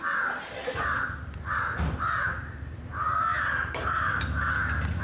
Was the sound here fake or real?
real